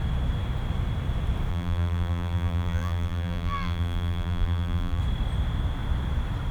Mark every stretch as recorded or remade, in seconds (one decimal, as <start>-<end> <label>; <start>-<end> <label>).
0.0-1.5 recorded; 1.5-5.0 remade; 5.0-6.5 recorded